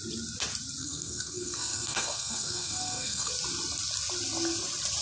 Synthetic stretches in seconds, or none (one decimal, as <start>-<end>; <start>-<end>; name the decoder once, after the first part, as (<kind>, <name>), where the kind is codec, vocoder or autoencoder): 0.8-3.3 (codec, SNAC)